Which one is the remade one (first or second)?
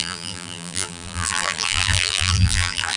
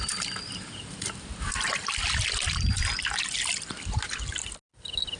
first